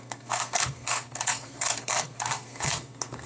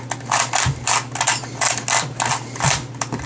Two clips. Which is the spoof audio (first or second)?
first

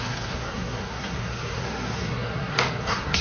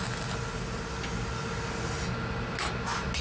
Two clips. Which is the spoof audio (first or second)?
first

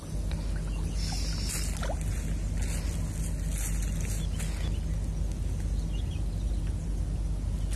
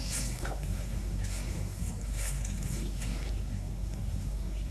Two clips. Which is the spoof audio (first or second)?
second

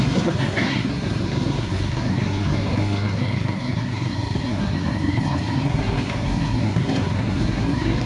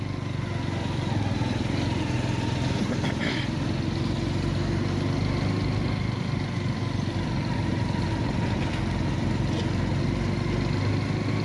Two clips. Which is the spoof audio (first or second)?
first